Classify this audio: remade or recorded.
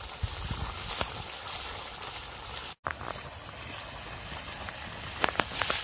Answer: recorded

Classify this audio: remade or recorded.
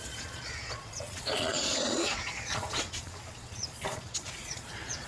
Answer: remade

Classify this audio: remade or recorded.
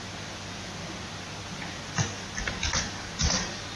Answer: recorded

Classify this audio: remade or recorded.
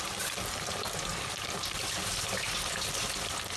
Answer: recorded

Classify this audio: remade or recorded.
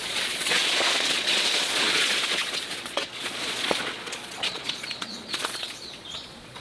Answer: remade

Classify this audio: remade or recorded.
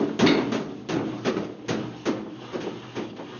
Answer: recorded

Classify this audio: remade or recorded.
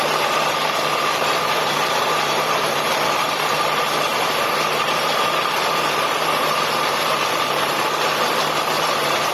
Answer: remade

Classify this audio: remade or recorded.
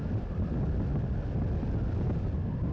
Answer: recorded